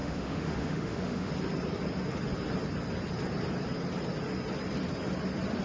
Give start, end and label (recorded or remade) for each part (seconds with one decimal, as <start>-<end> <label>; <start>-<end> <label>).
0.0-1.3 remade; 1.3-5.6 recorded